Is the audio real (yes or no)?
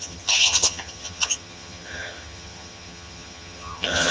no